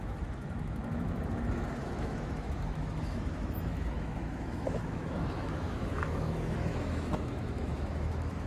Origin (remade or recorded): remade